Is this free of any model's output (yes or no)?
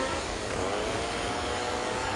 no